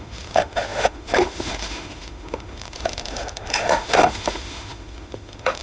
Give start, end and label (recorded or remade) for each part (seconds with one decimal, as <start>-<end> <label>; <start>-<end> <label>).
0.0-5.6 remade